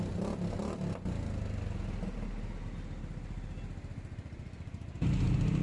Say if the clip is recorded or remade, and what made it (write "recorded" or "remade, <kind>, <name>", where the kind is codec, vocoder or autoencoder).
recorded